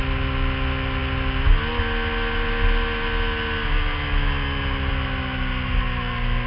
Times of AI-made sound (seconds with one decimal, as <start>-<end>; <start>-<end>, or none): none